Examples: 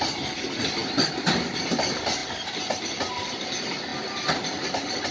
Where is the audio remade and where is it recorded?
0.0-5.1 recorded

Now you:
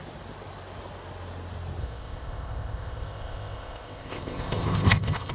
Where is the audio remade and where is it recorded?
0.0-1.8 recorded; 1.8-5.3 remade

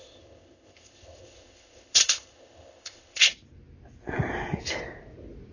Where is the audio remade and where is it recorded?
0.0-3.3 remade; 3.3-5.5 recorded